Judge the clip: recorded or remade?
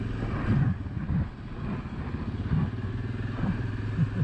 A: recorded